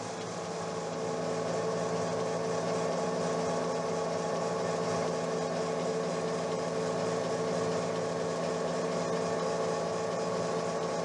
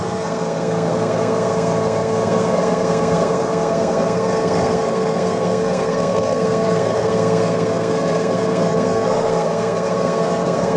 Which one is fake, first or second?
second